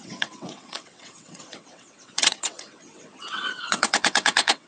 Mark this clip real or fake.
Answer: fake